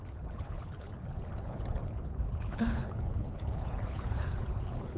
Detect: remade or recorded remade